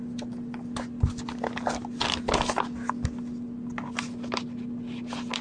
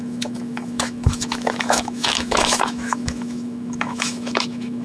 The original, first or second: first